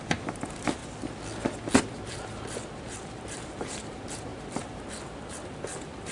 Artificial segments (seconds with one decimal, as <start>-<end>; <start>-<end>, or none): 0.0-0.8; 1.9-6.1